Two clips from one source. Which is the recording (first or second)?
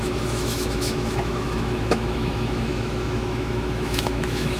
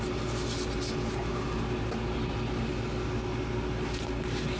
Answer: second